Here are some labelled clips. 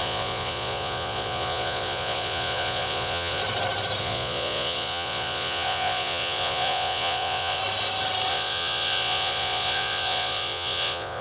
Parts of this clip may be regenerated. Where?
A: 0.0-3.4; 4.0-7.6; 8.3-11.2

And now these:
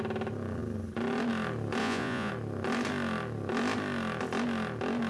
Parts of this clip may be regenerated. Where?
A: 1.8-2.3

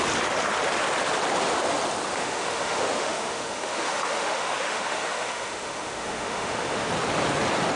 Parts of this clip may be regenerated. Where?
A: 2.2-6.9

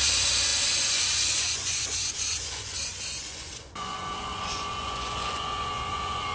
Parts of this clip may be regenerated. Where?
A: 0.0-6.3

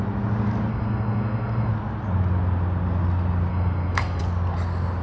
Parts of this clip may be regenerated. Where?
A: 0.7-1.7; 3.5-4.2

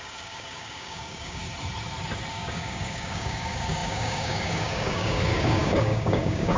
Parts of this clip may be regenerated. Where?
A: 0.0-1.4; 2.3-6.6

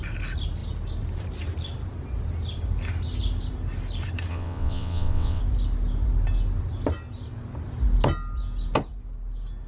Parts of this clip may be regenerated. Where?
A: 4.3-5.4